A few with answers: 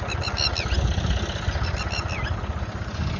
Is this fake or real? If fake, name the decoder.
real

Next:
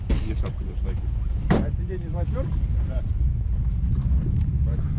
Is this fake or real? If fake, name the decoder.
fake, vocoder, BigVGAN v2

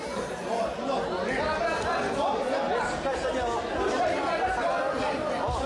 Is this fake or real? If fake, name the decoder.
real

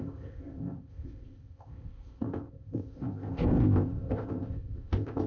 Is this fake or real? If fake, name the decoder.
fake, codec, ZipCodec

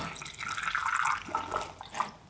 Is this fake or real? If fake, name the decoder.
real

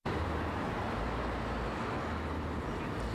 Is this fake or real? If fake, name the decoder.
real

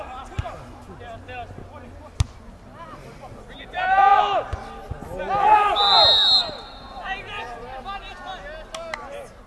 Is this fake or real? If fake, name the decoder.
real